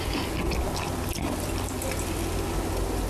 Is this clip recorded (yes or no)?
yes